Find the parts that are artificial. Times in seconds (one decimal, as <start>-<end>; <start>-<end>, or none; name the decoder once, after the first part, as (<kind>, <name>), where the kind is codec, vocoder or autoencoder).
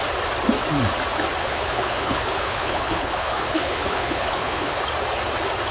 1.4-4.8 (codec, HILCodec)